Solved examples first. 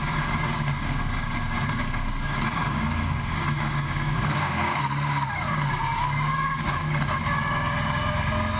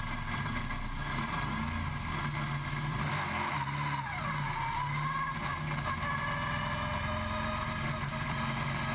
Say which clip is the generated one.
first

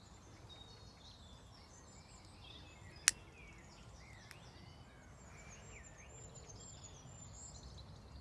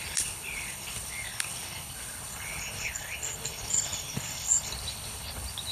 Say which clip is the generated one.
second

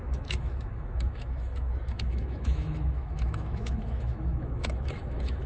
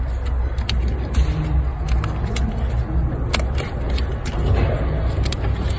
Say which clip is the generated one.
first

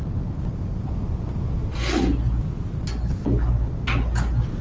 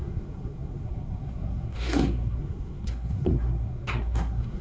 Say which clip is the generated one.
second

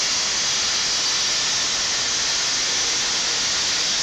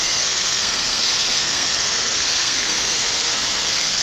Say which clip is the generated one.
second